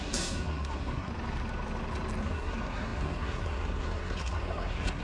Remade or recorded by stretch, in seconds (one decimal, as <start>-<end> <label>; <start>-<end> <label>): 0.0-1.1 remade; 1.1-2.2 recorded; 2.2-5.0 remade